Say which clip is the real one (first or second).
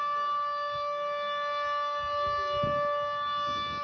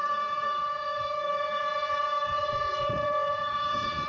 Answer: first